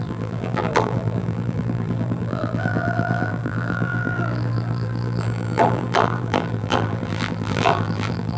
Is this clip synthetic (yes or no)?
yes